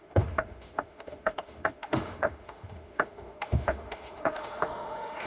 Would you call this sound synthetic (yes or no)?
yes